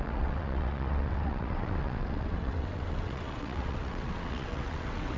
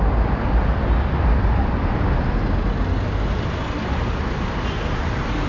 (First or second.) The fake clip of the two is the first